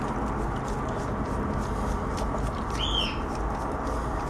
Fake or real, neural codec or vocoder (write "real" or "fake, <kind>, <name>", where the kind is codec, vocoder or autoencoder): real